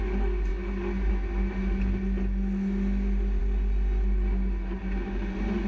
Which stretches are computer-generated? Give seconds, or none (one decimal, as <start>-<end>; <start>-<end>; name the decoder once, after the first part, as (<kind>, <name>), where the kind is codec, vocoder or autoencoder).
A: none